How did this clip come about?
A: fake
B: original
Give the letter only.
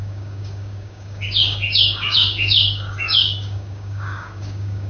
A